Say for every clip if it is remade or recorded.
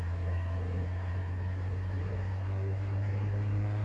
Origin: remade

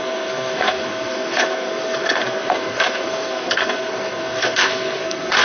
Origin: remade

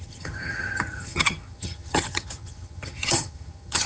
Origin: remade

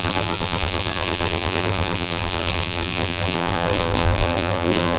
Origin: remade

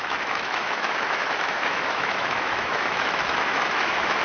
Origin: remade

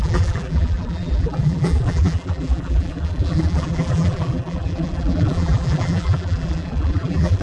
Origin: remade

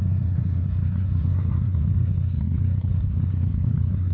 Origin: remade